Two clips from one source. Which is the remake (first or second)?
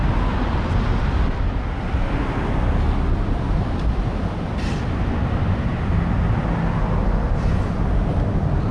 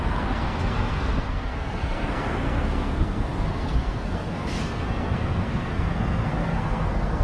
second